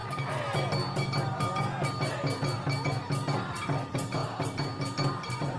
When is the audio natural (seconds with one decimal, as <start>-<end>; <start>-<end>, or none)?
0.0-3.4; 4.2-4.8